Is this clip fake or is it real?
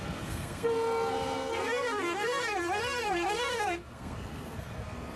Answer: fake